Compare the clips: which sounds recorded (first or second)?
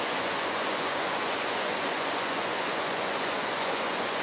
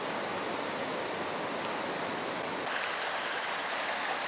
second